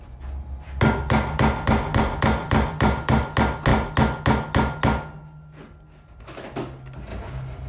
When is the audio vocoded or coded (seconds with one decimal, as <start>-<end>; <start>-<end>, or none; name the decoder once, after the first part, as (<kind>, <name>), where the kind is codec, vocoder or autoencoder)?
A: 2.4-3.2 (vocoder, BigVGAN v2)